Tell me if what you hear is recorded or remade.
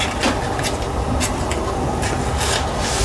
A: recorded